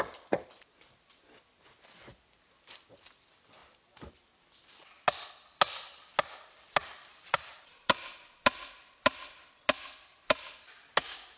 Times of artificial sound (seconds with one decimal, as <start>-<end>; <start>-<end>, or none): 7.1-8.3